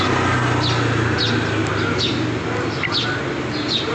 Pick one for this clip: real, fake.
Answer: real